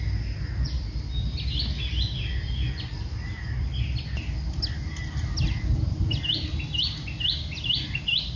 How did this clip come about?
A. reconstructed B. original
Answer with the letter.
B